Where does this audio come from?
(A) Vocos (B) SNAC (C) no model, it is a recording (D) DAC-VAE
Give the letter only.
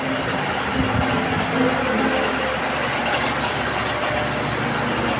C